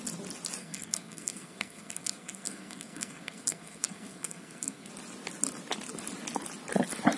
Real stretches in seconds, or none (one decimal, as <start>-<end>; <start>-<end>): 0.0-0.6; 4.9-7.2